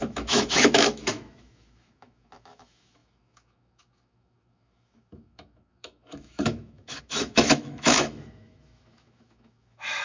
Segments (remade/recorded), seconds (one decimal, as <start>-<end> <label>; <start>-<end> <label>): 0.0-10.0 remade